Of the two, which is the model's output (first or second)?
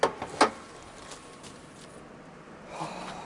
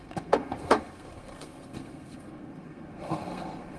second